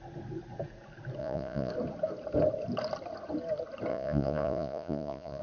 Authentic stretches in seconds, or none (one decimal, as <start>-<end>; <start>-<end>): 0.0-1.2; 1.7-3.9